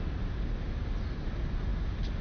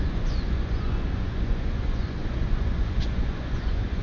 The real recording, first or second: first